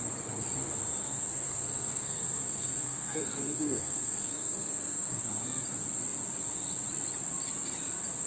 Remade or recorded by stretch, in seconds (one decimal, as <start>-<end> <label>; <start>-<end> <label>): 0.0-1.0 recorded; 1.0-5.2 remade; 5.2-8.3 recorded